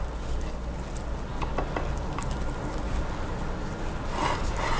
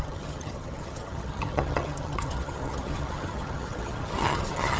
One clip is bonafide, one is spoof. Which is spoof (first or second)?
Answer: second